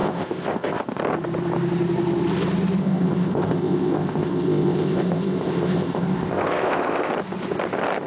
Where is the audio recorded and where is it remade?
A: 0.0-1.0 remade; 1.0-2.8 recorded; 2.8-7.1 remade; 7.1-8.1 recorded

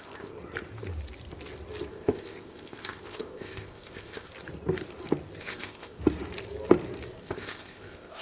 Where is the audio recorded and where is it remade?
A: 0.0-0.4 remade; 0.4-1.9 recorded; 1.9-4.3 remade; 4.3-5.4 recorded; 5.4-6.0 remade; 6.0-7.2 recorded; 7.2-8.2 remade

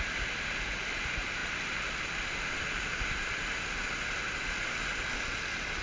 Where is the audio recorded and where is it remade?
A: 0.0-5.8 recorded

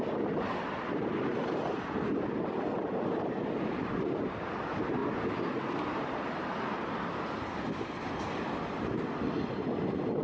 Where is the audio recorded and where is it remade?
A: 0.0-10.2 recorded